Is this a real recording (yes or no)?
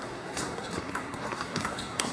no